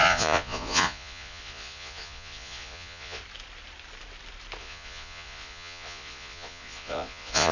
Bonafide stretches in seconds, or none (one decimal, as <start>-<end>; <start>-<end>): 3.2-4.6